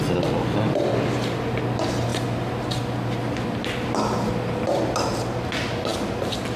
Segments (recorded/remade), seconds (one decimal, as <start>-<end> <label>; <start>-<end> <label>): 0.0-6.6 recorded